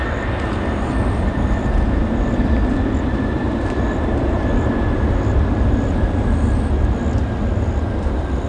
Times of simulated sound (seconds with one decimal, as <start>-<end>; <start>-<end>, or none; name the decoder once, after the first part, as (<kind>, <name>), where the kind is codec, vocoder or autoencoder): 3.4-5.7 (vocoder, BigVGAN v2)